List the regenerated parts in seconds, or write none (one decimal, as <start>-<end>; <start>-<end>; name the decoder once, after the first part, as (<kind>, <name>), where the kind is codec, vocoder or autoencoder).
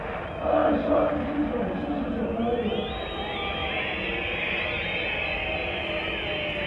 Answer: none